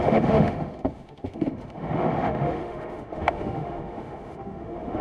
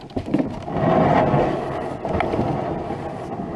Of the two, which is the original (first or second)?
second